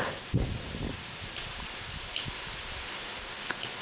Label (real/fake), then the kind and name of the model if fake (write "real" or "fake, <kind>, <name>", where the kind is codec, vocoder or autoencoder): real